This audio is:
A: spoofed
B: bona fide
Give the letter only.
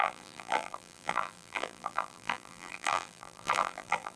A